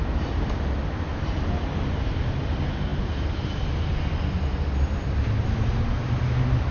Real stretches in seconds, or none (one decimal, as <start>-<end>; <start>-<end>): 0.0-6.7